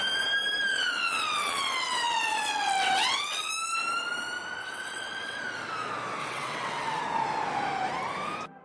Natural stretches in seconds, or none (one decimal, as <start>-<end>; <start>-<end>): 0.0-0.7; 3.5-4.6; 5.4-6.2; 7.0-8.6